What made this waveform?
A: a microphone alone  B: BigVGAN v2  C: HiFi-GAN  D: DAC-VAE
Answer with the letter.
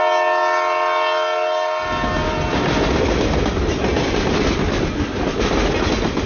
A